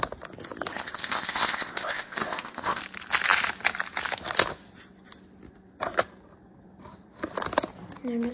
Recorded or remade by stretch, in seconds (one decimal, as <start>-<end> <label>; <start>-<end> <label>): 0.0-0.7 recorded; 0.7-2.8 remade; 2.8-8.3 recorded